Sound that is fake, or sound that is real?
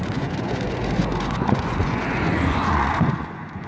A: fake